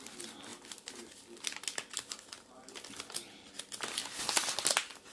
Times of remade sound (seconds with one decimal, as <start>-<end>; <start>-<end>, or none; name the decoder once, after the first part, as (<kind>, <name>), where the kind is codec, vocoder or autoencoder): none